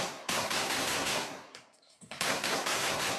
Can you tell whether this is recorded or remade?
remade